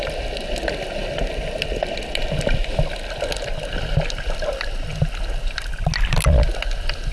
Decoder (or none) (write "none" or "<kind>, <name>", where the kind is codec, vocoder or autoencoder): none